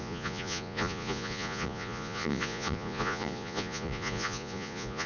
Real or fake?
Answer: fake